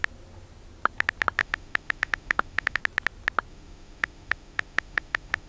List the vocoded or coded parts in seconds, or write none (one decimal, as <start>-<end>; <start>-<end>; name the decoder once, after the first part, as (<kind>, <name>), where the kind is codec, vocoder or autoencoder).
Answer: 1.4-2.8 (autoencoder, DAC-VAE); 3.5-5.5